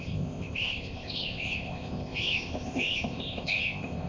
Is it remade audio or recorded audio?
remade